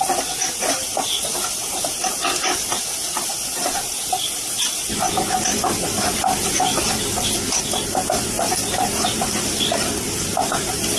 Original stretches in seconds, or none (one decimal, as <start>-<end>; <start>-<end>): 0.0-11.0